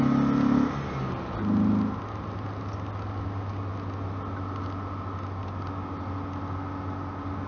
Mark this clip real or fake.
real